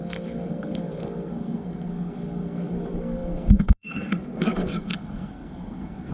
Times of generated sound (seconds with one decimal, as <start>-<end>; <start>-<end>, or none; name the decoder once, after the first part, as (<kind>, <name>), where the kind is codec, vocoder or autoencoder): 0.0-6.1 (codec, SNAC)